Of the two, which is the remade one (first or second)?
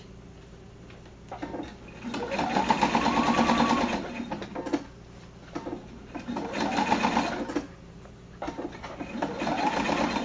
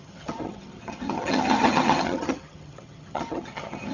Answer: second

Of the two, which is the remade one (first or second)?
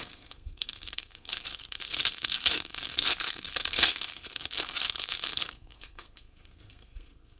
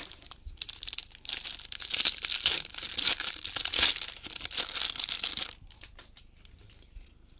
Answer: first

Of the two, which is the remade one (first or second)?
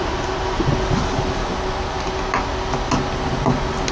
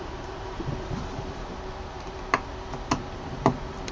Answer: second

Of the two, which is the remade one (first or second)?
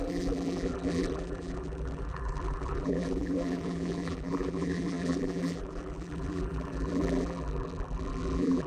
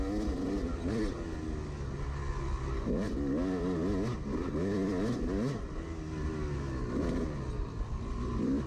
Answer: first